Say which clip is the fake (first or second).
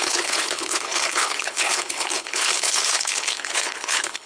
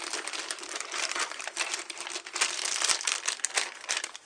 first